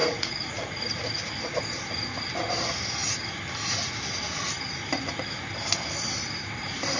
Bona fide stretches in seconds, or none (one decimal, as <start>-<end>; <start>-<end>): 0.8-7.0

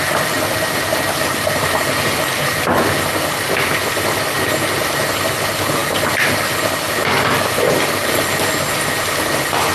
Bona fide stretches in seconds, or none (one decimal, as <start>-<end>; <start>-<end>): 0.0-9.7